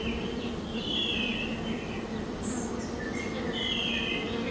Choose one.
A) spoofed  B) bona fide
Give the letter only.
B